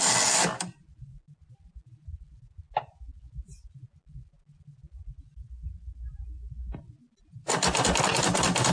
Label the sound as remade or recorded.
recorded